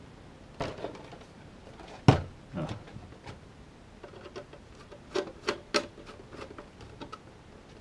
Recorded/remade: recorded